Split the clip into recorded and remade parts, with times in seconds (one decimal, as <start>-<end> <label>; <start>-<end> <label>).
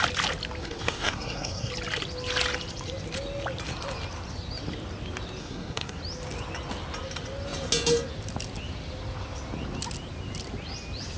0.0-0.6 recorded; 0.6-1.7 remade; 1.7-5.4 recorded; 5.4-6.0 remade; 6.0-11.2 recorded